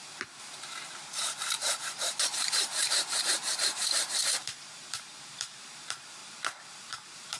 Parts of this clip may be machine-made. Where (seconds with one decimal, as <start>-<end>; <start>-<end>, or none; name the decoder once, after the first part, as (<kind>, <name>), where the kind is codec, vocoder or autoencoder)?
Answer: 0.0-6.2 (vocoder, BigVGAN v2); 6.8-7.4